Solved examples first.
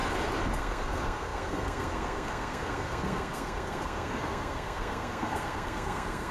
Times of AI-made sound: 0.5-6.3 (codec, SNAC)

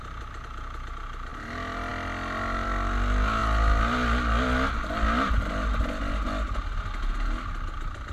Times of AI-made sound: none

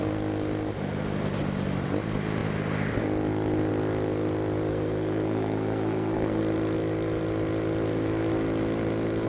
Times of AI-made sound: 4.7-6.4 (codec, SNAC)

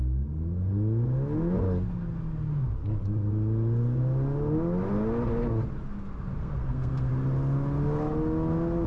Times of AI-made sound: 6.4-7.1 (codec, SNAC)

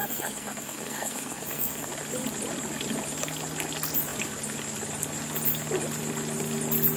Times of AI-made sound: 0.0-1.9 (codec, SNAC)